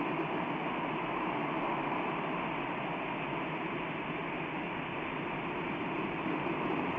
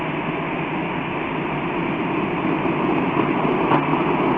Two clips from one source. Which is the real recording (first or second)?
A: second